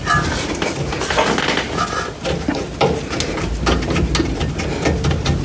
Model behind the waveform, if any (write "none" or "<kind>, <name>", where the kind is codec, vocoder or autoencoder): none